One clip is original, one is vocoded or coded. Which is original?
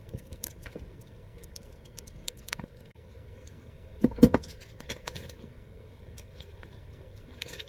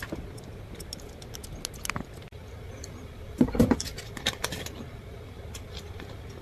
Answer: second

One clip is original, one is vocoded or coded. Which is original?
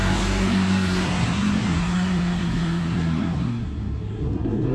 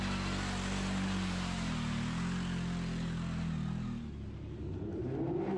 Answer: second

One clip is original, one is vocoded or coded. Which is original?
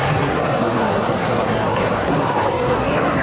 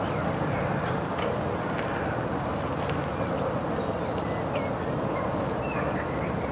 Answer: second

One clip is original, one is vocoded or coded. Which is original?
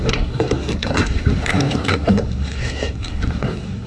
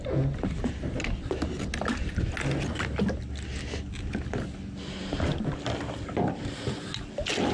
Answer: second